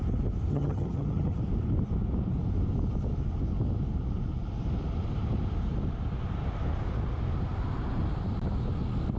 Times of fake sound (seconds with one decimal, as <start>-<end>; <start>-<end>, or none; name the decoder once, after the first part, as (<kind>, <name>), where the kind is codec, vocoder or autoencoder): 0.5-1.4 (vocoder, HiFi-GAN)

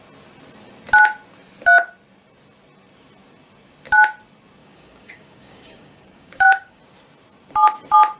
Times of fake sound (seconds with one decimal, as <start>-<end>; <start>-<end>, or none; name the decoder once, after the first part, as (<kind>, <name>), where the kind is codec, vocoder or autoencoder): 4.6-6.8 (codec, DAC)

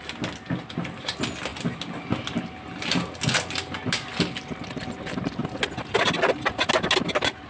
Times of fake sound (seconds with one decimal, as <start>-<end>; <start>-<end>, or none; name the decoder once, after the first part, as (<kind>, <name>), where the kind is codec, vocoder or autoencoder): none

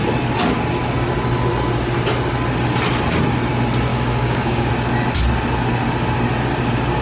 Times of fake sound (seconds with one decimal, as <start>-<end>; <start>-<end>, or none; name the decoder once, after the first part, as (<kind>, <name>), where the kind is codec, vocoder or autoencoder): 3.9-4.7 (codec, DAC)